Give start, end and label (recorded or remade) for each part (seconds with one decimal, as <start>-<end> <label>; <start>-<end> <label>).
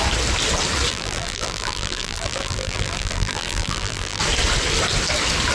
0.0-0.9 recorded; 0.9-4.2 remade; 4.2-5.5 recorded